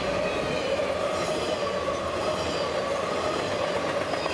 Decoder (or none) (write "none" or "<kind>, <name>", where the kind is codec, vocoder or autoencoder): none